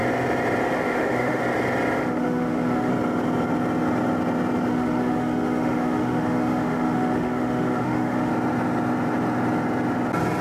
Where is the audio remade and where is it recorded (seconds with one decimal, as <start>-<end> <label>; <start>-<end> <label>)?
0.0-0.6 recorded; 0.6-1.4 remade; 1.4-2.0 recorded; 2.0-2.9 remade; 2.9-4.7 recorded; 4.7-8.3 remade; 8.3-10.4 recorded